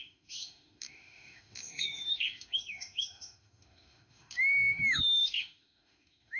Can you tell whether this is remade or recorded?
remade